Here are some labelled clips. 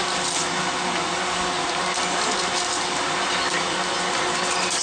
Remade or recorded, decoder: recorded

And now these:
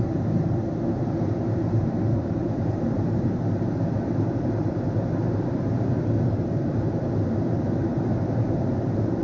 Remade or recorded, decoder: remade, vocoder, BigVGAN v2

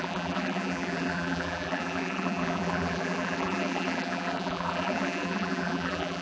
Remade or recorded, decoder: remade, vocoder, BigVGAN v2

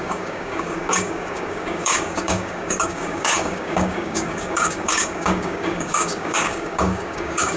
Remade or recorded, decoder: remade, codec, DAC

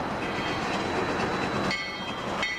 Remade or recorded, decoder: recorded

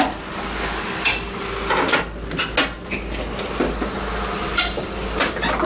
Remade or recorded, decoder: recorded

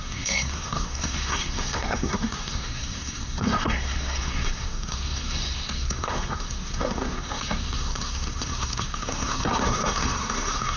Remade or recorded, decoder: remade, codec, SNAC